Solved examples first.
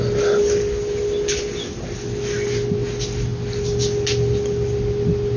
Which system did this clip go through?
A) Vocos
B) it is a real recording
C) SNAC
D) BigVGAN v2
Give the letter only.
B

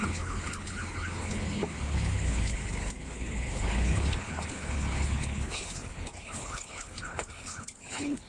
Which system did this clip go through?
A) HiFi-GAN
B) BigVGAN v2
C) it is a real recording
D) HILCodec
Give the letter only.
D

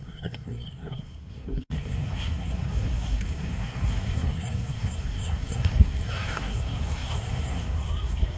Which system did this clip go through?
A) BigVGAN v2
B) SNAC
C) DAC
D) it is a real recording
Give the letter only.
B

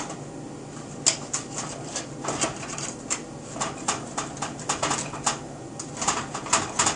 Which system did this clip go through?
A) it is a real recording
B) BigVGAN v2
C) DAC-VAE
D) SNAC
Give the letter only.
A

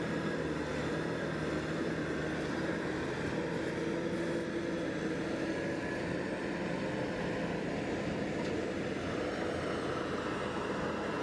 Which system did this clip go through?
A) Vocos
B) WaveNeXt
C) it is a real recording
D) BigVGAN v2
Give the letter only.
C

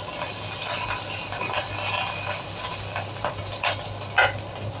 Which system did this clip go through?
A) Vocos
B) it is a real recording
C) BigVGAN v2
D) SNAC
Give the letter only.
B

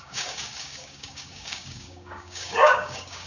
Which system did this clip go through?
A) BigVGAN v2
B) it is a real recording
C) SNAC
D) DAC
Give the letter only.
D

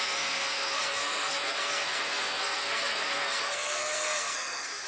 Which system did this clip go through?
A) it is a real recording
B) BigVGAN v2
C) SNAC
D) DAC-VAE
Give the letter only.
C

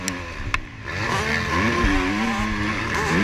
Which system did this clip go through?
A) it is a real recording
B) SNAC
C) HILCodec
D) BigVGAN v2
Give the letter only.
A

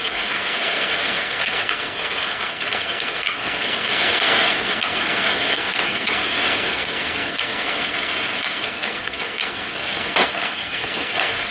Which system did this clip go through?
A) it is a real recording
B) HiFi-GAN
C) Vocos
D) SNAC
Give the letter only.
D